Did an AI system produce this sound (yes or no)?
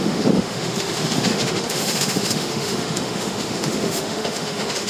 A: yes